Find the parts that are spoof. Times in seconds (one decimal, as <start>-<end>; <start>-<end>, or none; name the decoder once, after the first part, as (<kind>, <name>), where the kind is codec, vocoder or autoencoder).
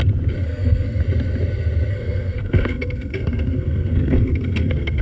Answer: 0.4-1.0 (codec, SNAC); 1.9-5.0